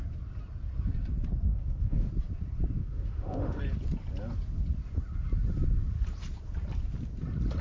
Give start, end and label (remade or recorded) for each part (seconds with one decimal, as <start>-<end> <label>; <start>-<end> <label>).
0.0-1.5 recorded; 1.5-2.1 remade; 2.1-2.8 recorded; 2.8-3.6 remade; 3.6-7.6 recorded